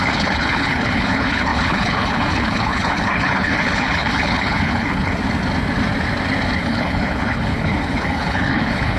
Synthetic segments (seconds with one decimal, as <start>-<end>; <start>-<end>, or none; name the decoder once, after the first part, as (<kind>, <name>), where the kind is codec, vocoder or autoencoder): 0.0-5.2 (codec, HILCodec); 6.6-9.0